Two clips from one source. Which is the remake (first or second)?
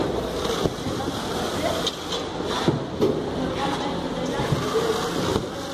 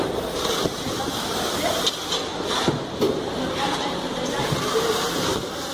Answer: second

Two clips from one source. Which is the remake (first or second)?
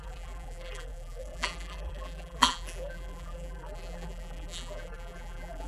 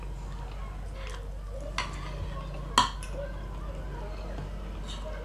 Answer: first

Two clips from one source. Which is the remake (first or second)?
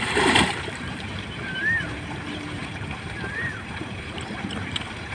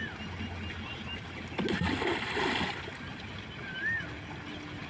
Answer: first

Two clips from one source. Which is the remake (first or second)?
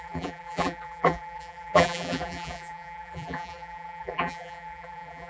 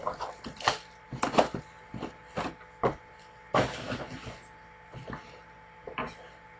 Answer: first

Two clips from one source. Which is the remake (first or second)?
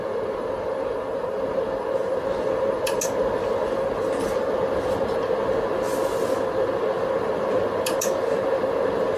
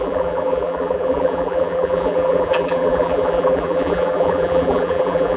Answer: second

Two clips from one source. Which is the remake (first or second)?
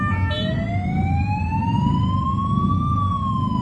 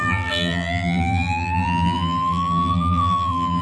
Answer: second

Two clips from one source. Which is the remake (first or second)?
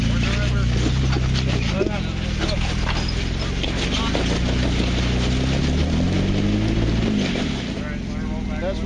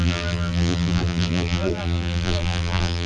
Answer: second